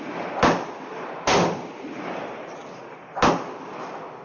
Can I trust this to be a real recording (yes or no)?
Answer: yes